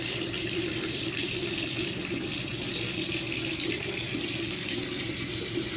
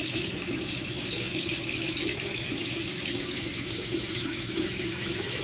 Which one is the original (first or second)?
first